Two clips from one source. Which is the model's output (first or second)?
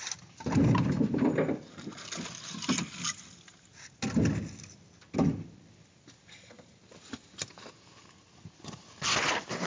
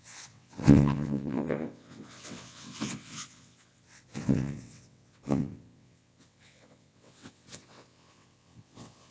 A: second